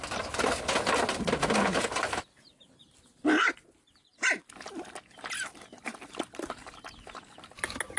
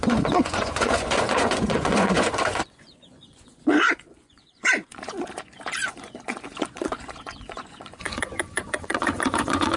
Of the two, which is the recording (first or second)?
first